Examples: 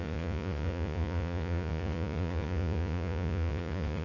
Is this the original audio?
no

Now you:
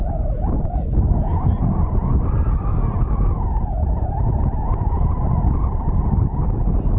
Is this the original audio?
yes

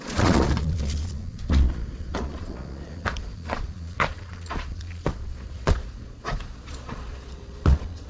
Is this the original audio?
no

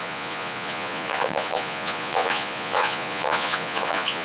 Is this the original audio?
no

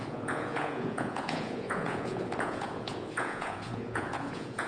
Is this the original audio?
no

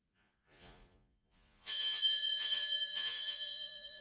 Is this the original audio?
no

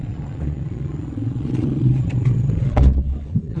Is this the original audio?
no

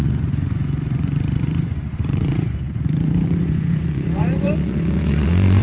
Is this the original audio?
no